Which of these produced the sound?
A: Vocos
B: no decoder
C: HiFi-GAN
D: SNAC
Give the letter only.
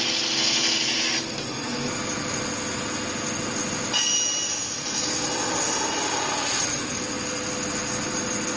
B